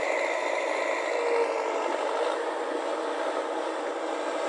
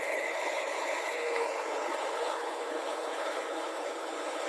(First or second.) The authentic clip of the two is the first